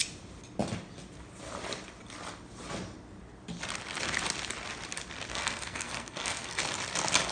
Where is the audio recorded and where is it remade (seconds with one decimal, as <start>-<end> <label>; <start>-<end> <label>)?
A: 0.0-5.3 recorded; 5.3-6.6 remade; 6.6-7.3 recorded